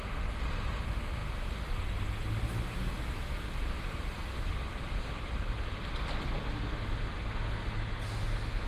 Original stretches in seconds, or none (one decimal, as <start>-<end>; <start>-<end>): 0.0-8.7